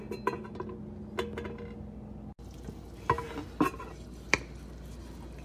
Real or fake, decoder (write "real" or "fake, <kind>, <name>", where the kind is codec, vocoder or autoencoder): real